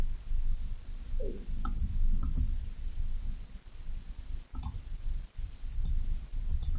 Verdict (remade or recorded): recorded